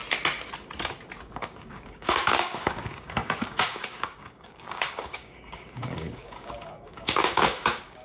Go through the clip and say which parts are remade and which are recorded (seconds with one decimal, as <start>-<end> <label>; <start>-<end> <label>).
0.0-1.2 recorded; 1.2-8.0 remade